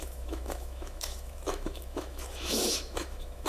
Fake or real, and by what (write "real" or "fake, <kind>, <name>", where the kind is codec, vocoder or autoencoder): fake, autoencoder, DAC-VAE